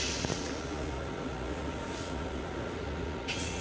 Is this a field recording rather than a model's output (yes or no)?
no